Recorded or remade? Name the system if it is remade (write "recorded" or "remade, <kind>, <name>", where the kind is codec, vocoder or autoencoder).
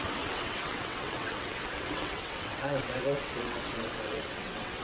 remade, vocoder, WaveNeXt